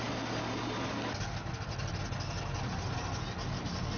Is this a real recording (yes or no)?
yes